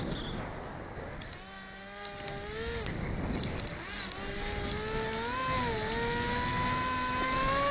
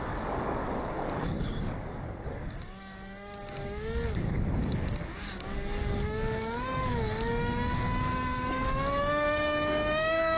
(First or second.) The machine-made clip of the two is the second